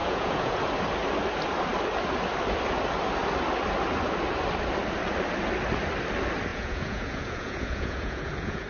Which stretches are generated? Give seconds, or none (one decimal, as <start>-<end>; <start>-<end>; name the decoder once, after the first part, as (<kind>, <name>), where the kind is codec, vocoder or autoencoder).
0.0-0.6 (vocoder, Vocos); 6.5-8.7